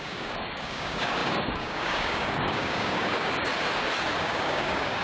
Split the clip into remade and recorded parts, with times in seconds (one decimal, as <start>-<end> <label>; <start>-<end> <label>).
0.0-3.5 remade; 3.5-4.2 recorded; 4.2-5.0 remade